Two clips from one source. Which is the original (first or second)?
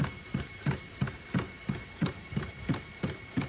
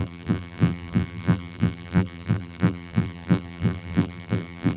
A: first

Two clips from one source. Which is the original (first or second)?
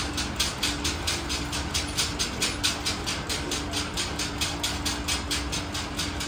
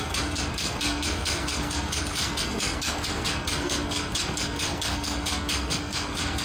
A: first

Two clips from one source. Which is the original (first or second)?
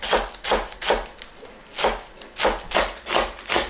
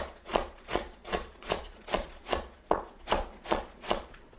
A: first